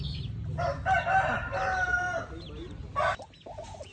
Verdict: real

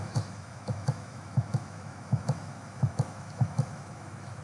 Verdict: fake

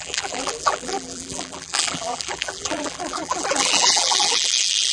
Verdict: fake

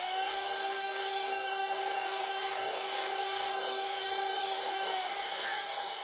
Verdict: fake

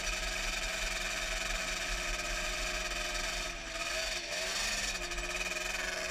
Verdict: real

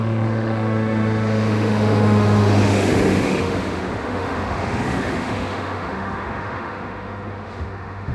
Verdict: fake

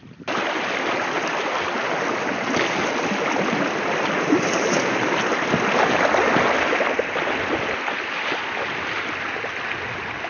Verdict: real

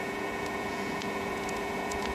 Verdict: fake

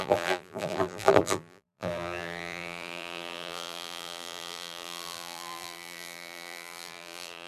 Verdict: fake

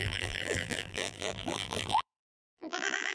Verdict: fake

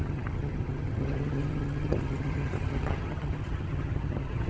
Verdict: fake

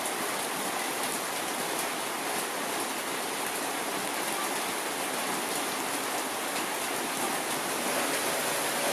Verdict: real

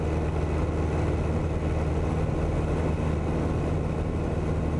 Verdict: real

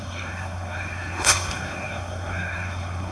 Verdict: fake